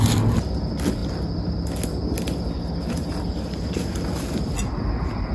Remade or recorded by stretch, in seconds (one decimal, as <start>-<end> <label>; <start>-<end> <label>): 0.0-5.3 recorded